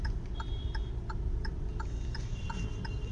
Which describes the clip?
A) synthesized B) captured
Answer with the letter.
A